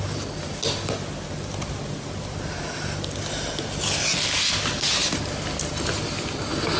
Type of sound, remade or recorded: recorded